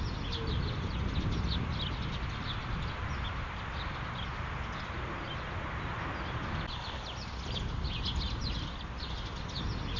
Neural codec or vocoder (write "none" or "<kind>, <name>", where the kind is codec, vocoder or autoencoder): none